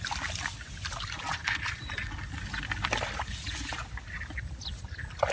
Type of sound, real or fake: real